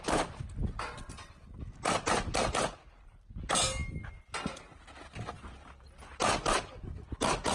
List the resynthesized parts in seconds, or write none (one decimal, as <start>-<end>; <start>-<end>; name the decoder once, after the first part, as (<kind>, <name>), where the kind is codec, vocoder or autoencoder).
none